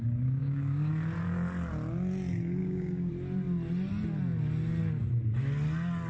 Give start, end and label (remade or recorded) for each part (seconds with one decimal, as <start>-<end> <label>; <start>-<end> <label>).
0.0-0.4 recorded; 0.4-0.9 remade; 0.9-2.6 recorded; 2.6-3.1 remade; 3.1-6.1 recorded